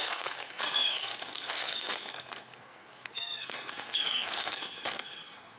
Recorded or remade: remade